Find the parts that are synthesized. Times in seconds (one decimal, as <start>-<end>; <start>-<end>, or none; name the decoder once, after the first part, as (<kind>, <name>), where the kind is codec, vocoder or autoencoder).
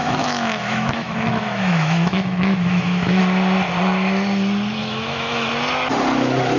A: 0.0-3.2 (autoencoder, DAC-VAE); 4.8-5.5